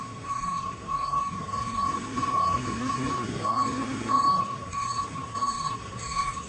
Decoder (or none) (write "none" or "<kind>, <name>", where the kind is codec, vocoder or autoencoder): codec, SNAC